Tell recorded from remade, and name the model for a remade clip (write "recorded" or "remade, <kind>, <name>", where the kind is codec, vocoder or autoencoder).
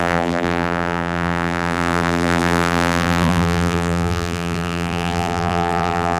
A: remade, vocoder, BigVGAN v2